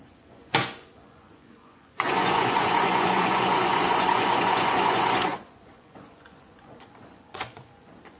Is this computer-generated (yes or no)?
yes